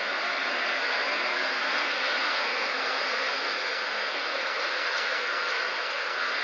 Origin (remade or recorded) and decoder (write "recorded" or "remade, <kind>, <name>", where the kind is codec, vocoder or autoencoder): remade, codec, SNAC